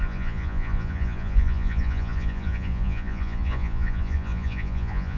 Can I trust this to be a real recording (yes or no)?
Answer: no